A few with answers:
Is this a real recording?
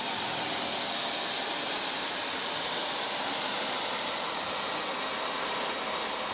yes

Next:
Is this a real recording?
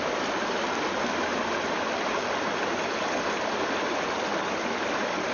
yes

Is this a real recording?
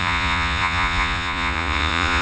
no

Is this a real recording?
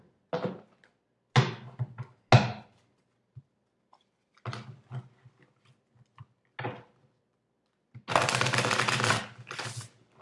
yes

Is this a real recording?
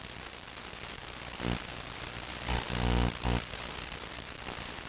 yes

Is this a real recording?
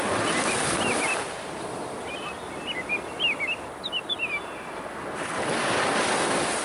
yes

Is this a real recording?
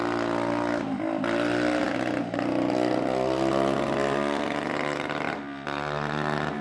yes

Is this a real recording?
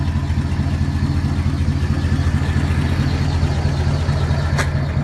yes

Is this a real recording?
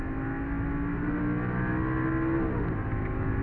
yes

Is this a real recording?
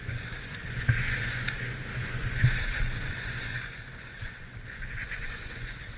no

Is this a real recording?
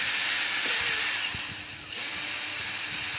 yes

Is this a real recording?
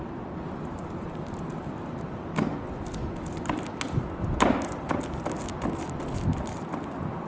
yes